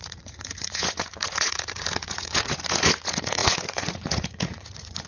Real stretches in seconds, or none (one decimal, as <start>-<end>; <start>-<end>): none